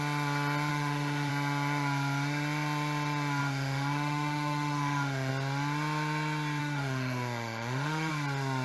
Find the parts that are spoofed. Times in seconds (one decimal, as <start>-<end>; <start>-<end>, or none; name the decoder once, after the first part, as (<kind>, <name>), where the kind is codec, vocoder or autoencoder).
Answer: 0.7-1.3 (autoencoder, DAC-VAE); 3.4-5.3; 6.6-8.1